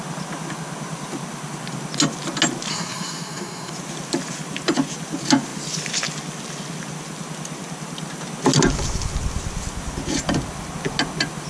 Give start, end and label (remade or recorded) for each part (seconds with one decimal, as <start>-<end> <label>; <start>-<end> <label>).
0.0-2.7 recorded; 2.7-3.7 remade; 3.7-11.5 recorded